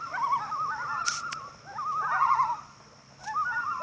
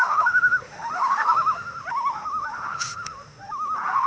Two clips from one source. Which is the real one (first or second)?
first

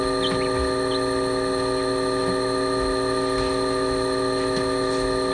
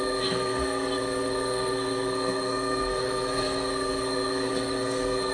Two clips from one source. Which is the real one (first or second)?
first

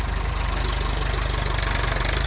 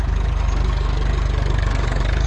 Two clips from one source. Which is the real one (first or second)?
first